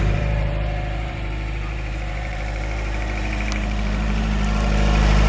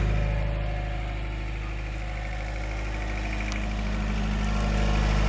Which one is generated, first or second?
first